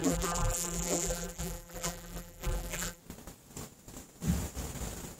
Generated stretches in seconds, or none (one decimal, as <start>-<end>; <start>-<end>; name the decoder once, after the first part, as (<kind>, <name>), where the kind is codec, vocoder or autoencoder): 0.0-3.0 (vocoder, BigVGAN v2)